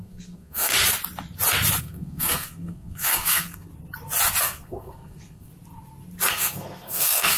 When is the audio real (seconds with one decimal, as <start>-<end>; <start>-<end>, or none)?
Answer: 0.7-1.8; 3.7-4.4; 5.5-6.3